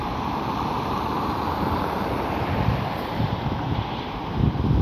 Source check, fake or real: fake